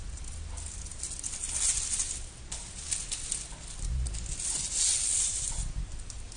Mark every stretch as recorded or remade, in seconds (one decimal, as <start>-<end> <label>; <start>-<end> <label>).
0.0-6.4 recorded